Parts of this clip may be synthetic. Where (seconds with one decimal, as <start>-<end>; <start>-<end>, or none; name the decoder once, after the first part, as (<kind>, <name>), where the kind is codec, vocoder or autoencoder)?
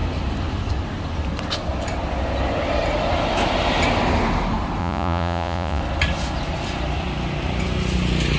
4.8-5.8 (vocoder, Vocos)